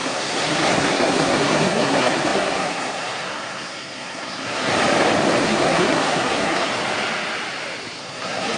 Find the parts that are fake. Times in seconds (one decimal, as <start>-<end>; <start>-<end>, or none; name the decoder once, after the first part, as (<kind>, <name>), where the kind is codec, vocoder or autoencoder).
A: 0.0-4.7 (codec, SNAC); 5.4-6.7; 8.0-8.6